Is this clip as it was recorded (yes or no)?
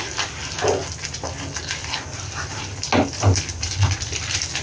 yes